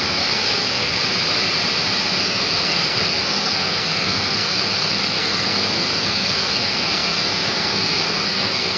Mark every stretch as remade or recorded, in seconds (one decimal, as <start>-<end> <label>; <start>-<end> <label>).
0.0-1.0 remade; 1.0-2.2 recorded; 2.2-8.8 remade